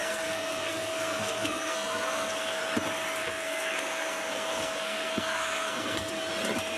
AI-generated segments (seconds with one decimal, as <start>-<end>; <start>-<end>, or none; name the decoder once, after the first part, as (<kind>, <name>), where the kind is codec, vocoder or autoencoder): 0.0-2.6 (codec, SNAC); 3.2-6.1